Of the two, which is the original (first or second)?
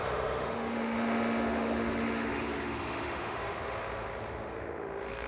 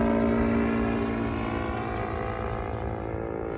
second